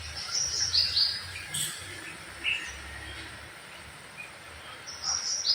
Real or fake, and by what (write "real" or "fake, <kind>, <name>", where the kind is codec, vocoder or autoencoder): real